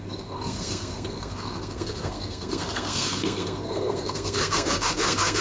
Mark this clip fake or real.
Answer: fake